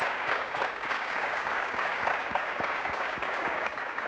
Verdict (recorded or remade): remade